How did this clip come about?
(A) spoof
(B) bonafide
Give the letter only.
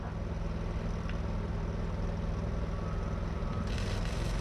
B